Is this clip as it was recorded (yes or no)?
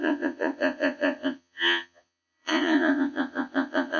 no